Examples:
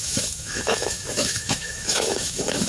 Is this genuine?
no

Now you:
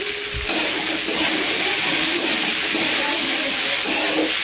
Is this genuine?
yes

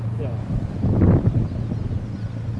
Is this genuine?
yes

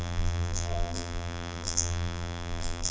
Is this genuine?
no